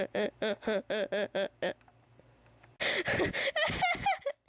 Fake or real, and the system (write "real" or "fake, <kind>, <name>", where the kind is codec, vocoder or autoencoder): real